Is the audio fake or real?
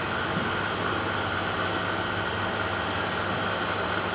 real